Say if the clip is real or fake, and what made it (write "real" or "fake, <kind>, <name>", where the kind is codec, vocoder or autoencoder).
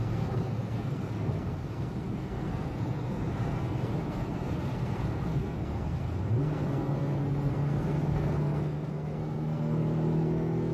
fake, codec, SNAC